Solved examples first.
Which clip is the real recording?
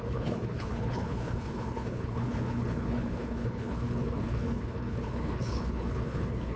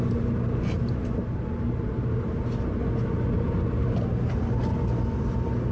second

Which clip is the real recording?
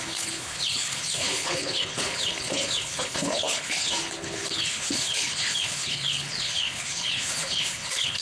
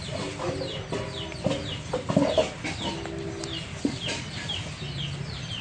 second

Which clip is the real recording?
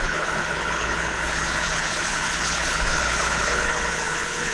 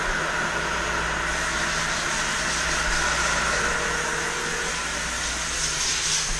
second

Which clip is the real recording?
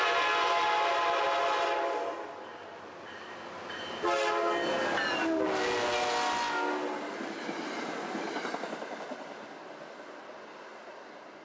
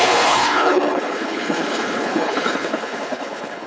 first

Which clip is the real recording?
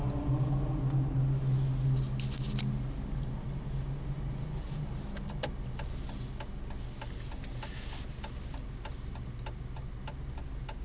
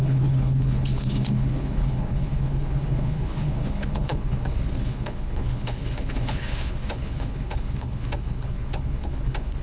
first